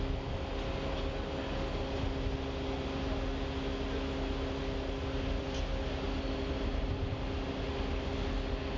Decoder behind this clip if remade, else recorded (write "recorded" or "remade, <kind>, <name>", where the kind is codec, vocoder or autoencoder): recorded